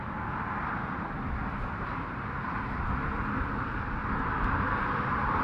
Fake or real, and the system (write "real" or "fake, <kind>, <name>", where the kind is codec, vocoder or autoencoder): real